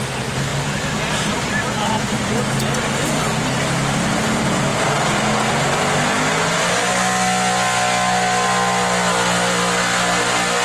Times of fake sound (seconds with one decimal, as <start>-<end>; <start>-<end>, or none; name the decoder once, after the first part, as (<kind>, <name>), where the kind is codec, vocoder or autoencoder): 4.7-5.5 (vocoder, BigVGAN v2)